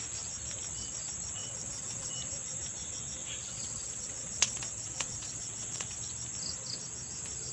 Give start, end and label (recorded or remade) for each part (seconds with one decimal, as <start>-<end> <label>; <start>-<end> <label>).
0.0-1.4 recorded; 1.4-2.1 remade; 2.1-3.2 recorded; 3.2-6.0 remade; 6.0-7.5 recorded